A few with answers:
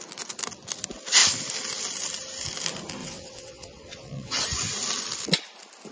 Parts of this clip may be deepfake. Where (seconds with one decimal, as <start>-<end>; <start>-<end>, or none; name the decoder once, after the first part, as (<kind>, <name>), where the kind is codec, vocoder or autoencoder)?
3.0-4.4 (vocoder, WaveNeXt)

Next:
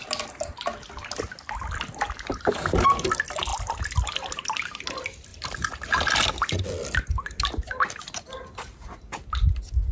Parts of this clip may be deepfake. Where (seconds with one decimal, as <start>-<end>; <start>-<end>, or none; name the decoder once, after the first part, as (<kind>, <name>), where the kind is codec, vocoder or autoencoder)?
none

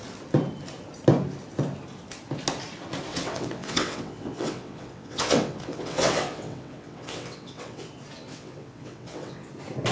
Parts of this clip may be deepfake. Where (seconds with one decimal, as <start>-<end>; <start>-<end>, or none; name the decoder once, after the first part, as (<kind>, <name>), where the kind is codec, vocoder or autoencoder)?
3.1-7.9 (vocoder, WaveNeXt); 8.3-9.5

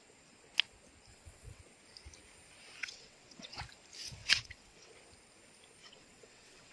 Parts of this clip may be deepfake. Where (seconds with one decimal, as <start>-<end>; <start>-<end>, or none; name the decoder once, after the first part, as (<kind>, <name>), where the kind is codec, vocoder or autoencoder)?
1.1-1.6 (vocoder, WaveNeXt); 2.8-3.6; 4.2-4.9; 5.8-6.7

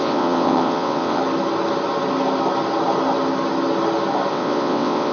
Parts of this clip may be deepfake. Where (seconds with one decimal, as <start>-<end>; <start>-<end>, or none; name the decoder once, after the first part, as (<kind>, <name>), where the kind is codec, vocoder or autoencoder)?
0.0-1.2 (vocoder, WaveNeXt); 4.3-5.1

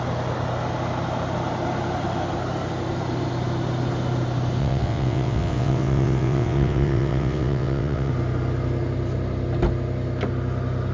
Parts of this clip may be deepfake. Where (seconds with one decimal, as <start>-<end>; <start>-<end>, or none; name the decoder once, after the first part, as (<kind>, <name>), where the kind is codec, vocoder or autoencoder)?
4.6-8.1 (vocoder, WaveNeXt)

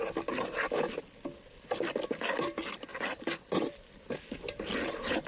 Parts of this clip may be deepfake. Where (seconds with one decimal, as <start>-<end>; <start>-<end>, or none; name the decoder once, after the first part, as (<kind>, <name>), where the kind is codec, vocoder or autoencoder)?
none

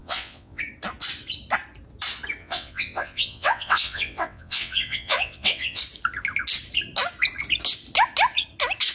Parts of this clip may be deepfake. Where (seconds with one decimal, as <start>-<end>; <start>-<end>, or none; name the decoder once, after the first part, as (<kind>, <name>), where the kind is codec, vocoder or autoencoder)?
0.0-0.6 (vocoder, WaveNeXt); 2.4-5.8